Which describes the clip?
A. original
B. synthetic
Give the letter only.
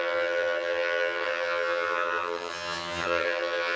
B